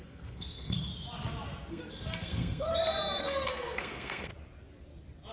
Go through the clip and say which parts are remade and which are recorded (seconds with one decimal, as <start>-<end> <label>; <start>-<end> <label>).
0.0-0.9 remade; 0.9-1.7 recorded; 1.7-2.7 remade; 2.7-3.2 recorded; 3.2-4.3 remade; 4.3-5.3 recorded